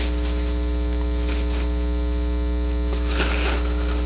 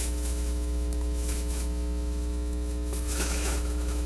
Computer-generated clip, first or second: second